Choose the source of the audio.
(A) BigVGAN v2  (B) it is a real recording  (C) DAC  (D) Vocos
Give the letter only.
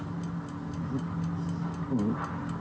B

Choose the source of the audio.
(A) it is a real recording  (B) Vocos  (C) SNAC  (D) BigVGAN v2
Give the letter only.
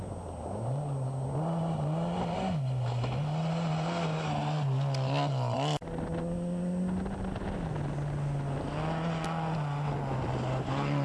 A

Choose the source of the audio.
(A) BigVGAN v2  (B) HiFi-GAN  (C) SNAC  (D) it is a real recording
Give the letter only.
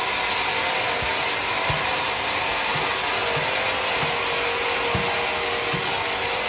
D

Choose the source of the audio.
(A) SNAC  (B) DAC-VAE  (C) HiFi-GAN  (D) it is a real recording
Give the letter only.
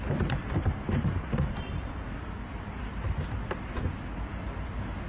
D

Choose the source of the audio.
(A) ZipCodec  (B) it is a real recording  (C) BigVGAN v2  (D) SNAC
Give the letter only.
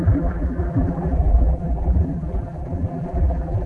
C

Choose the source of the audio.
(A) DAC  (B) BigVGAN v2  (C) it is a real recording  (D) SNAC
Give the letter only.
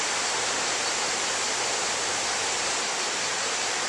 B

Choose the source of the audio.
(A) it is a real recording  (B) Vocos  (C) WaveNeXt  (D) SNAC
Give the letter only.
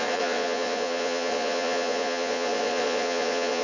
B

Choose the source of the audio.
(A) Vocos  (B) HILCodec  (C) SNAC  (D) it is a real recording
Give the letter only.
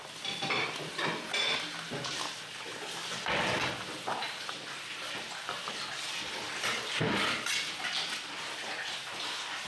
D